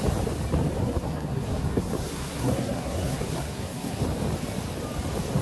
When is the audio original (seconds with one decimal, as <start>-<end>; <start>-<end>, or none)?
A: 0.0-0.8; 4.0-5.4